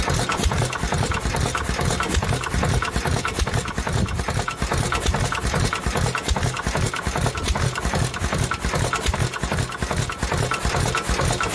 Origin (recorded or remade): recorded